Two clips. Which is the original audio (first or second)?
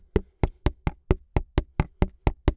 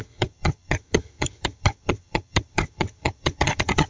first